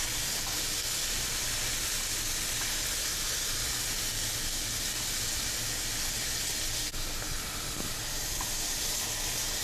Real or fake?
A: real